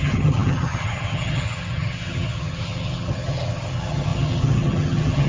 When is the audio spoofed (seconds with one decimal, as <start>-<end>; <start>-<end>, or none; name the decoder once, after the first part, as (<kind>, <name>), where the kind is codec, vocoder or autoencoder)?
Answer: 0.0-5.3 (vocoder, HiFi-GAN)